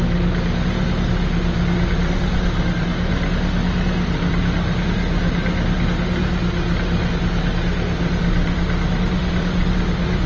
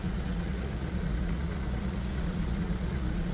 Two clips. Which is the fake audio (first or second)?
second